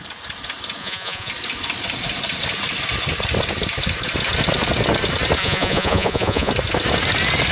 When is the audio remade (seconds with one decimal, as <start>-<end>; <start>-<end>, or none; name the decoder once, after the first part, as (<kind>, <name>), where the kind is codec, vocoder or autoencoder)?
0.8-1.3 (vocoder, Vocos); 5.4-6.5